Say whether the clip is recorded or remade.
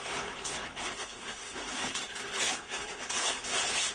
remade